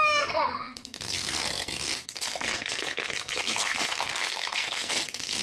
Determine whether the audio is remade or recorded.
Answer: remade